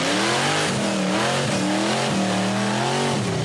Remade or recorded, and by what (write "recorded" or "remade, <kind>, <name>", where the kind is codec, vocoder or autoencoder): recorded